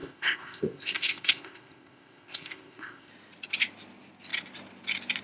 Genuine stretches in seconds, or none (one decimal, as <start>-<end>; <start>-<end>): 3.1-5.2